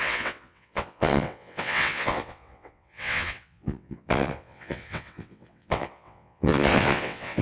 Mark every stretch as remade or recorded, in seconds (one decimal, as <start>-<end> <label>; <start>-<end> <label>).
0.0-7.4 remade